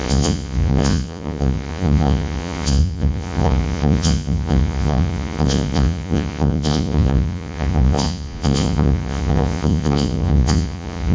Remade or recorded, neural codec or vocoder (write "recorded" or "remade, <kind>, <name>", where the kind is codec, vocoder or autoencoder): remade, vocoder, Vocos